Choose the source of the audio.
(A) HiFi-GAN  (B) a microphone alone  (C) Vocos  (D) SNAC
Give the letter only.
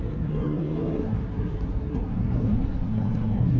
D